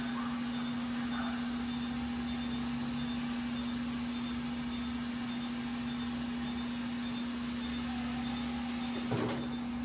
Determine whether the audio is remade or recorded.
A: recorded